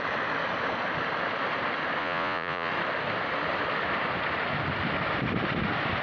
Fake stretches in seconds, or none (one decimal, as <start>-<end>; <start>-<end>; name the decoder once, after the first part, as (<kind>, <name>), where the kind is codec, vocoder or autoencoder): 2.0-2.7 (vocoder, Vocos)